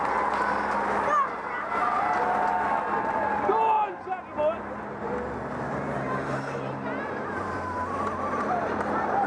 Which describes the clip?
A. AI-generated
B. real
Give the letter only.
B